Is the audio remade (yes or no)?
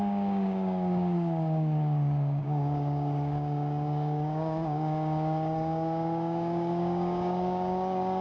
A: yes